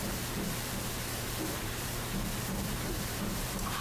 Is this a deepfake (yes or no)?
yes